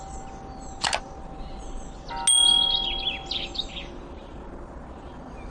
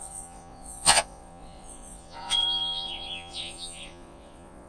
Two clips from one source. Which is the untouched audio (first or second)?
first